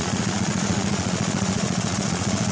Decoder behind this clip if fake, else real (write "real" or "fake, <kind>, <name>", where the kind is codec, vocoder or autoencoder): fake, vocoder, Vocos